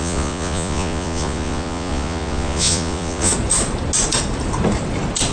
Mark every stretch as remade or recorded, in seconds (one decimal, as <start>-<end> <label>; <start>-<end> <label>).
0.0-3.3 remade; 3.3-5.3 recorded